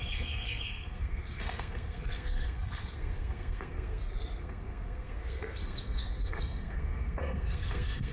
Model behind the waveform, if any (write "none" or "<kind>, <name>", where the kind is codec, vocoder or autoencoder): codec, SNAC